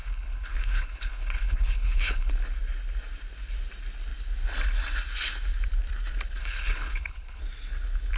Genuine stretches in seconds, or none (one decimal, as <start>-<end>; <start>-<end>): 2.3-6.4; 7.4-8.2